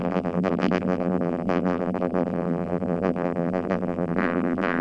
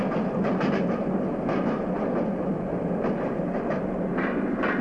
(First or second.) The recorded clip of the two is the second